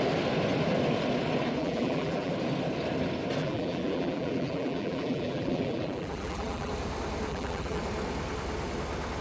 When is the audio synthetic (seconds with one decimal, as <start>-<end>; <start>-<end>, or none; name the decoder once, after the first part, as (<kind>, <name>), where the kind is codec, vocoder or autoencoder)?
1.6-2.3 (vocoder, BigVGAN v2); 3.4-6.7; 7.3-7.8